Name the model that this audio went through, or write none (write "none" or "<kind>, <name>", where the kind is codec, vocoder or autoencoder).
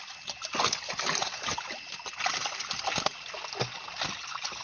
none